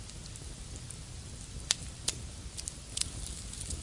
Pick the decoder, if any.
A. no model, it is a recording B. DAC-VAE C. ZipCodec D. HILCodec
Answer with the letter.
A